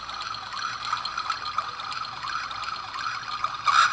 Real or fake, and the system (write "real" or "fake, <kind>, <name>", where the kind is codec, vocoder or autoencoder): real